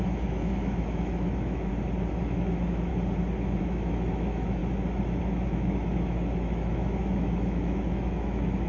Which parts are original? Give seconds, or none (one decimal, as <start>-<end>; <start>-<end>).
1.7-2.2; 2.9-3.6; 4.6-5.2

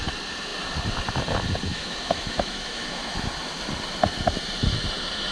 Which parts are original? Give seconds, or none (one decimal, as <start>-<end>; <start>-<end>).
0.0-1.7; 3.3-5.3

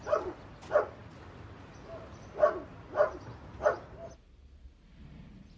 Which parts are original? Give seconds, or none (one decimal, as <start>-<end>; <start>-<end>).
0.0-5.6